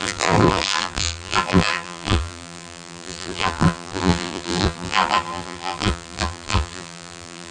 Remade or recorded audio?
remade